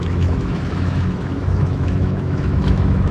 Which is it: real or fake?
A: fake